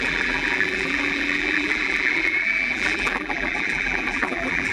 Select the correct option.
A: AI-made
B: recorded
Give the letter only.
A